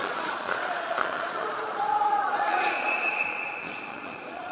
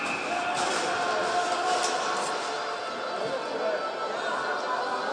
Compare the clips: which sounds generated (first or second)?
first